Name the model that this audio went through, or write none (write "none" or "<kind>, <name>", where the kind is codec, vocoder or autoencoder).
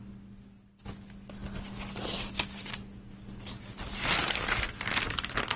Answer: none